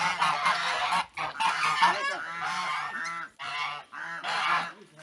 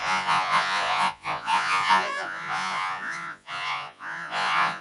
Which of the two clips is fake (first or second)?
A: second